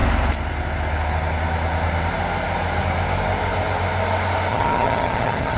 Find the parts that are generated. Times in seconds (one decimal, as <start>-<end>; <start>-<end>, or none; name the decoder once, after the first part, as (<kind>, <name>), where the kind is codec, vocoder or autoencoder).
4.5-5.6 (vocoder, HiFi-GAN)